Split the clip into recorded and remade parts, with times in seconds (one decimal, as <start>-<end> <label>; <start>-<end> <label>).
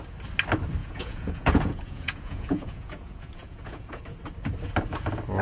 0.0-0.8 recorded; 0.8-4.0 remade; 4.0-5.4 recorded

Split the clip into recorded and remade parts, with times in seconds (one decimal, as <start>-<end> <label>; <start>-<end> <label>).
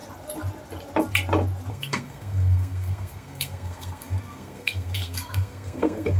0.0-1.7 recorded; 1.7-6.2 remade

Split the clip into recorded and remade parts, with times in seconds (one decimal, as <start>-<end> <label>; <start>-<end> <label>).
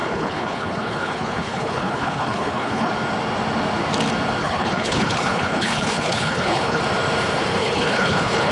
0.0-2.9 remade; 2.9-4.4 recorded; 4.4-6.8 remade; 6.8-7.6 recorded; 7.6-8.5 remade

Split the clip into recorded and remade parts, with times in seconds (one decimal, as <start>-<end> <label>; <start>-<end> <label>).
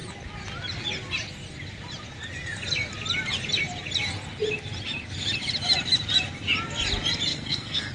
0.0-7.3 recorded; 7.3-7.9 remade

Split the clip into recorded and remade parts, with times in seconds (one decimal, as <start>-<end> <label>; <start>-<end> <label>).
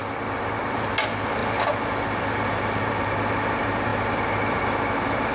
0.0-5.3 recorded